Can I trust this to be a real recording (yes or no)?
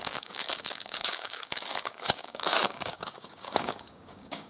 no